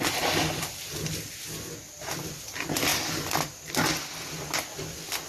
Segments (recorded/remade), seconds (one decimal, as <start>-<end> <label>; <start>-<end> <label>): 0.0-5.3 recorded